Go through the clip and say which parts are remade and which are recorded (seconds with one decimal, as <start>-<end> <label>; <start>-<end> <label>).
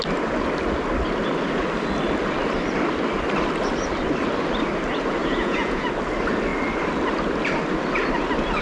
0.0-5.2 recorded; 5.2-5.9 remade; 5.9-8.6 recorded